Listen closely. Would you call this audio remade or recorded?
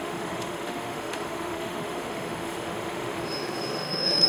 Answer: remade